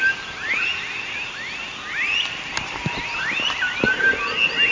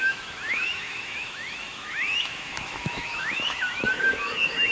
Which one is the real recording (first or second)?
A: first